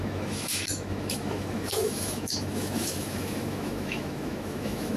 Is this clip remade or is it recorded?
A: remade